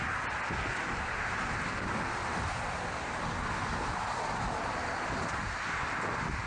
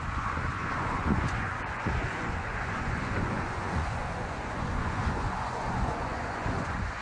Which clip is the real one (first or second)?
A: first